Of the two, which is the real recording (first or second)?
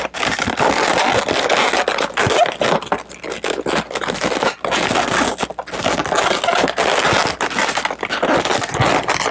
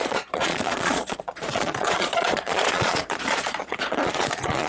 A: first